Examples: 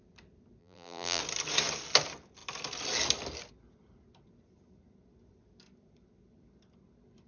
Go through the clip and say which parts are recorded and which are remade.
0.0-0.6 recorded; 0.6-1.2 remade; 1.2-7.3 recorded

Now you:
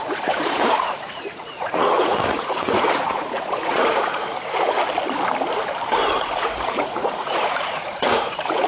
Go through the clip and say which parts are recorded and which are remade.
0.0-4.8 remade; 4.8-6.2 recorded; 6.2-8.7 remade

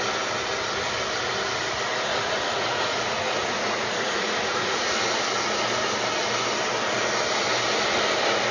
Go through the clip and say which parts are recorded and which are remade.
0.0-2.1 recorded; 2.1-4.9 remade; 4.9-8.5 recorded